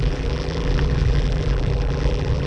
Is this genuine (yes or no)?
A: no